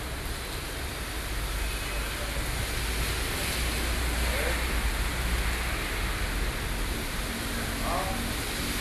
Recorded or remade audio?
recorded